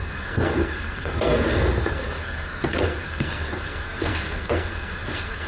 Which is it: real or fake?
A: fake